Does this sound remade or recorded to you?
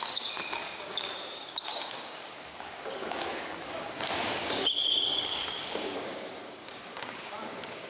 remade